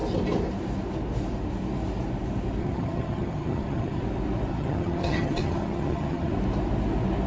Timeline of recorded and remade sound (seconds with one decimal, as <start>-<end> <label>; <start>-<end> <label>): 0.0-2.6 recorded; 2.6-4.0 remade; 4.0-4.5 recorded; 4.5-6.3 remade; 6.3-7.3 recorded